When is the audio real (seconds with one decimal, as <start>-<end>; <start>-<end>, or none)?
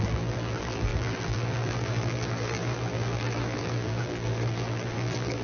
none